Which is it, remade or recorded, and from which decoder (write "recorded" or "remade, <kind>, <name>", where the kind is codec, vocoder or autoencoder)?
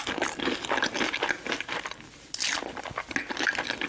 recorded